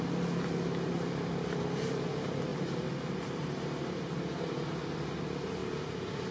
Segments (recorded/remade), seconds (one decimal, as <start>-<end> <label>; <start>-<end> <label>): 0.0-5.6 recorded; 5.6-6.3 remade